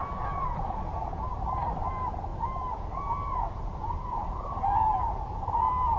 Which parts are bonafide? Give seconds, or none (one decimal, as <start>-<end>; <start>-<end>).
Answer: 1.3-1.9